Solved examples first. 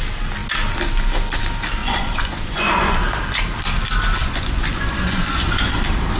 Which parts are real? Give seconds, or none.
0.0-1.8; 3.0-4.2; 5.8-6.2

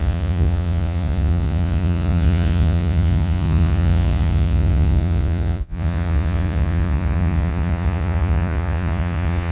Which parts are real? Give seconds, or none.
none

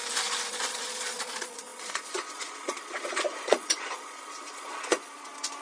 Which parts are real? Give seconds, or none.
0.0-0.5

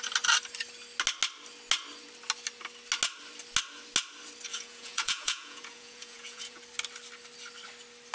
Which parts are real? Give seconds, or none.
0.0-4.5; 6.6-8.1

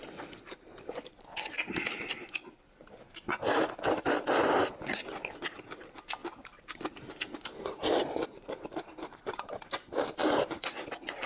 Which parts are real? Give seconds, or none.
0.0-11.3